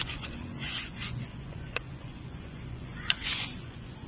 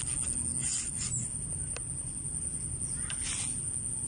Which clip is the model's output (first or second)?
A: first